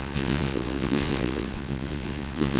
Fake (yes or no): yes